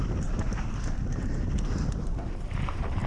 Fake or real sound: fake